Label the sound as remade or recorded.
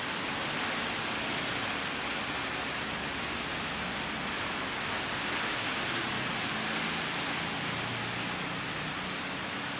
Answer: recorded